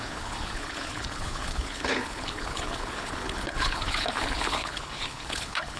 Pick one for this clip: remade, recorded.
remade